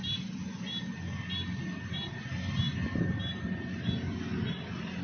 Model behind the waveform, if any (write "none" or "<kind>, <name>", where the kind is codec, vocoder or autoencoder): none